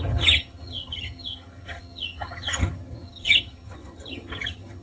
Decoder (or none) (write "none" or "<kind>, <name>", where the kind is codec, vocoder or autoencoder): vocoder, HiFi-GAN